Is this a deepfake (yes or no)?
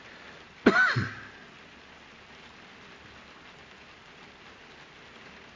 no